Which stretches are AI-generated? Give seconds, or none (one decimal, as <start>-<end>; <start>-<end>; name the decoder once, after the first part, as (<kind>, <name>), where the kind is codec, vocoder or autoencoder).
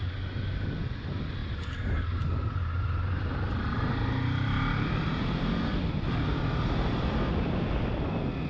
1.4-5.4 (vocoder, BigVGAN v2)